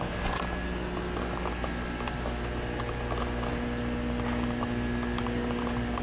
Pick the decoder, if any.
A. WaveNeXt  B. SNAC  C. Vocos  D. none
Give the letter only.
D